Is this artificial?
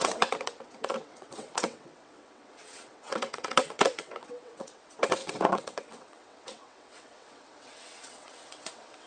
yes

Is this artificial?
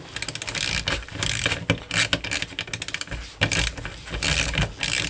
no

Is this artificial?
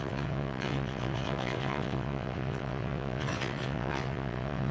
yes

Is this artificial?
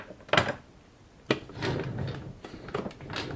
no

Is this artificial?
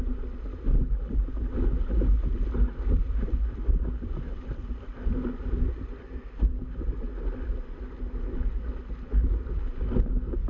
no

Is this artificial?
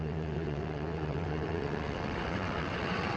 yes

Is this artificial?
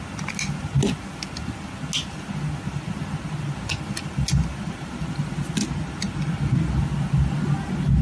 no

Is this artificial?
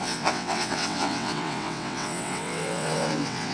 yes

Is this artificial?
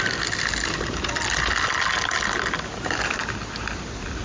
no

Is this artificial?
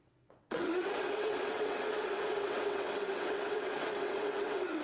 yes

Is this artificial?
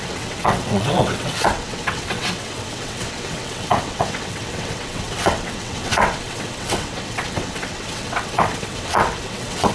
yes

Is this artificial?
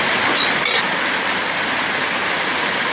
no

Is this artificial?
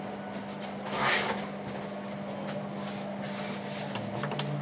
no